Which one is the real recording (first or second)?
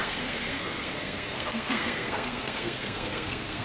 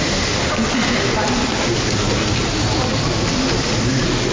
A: second